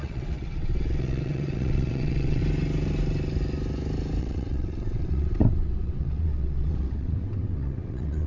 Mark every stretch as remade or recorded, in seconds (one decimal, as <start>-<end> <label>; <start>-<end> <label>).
0.0-2.4 remade; 2.4-4.2 recorded; 4.2-8.3 remade